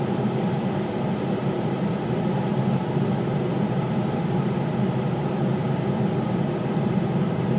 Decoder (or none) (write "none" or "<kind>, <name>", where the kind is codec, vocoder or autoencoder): none